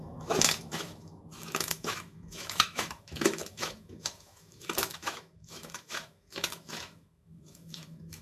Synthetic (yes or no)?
yes